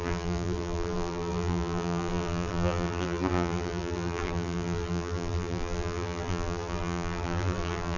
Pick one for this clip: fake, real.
fake